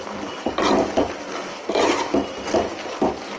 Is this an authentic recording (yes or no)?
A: yes